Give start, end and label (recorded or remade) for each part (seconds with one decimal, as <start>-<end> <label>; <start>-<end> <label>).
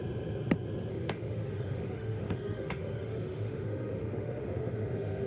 0.0-0.9 recorded; 0.9-5.3 remade